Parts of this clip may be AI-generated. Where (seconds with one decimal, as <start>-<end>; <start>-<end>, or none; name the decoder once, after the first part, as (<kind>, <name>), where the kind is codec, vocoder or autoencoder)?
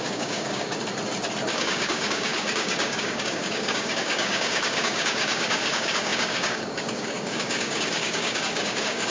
0.0-0.8 (codec, DAC); 1.5-9.1